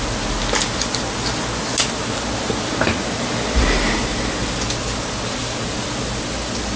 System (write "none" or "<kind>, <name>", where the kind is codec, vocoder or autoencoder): none